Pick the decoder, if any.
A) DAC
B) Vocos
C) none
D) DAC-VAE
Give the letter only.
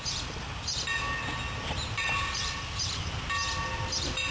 C